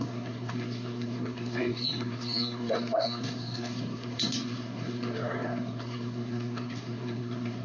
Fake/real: fake